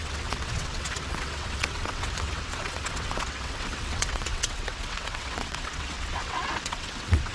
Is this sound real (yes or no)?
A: no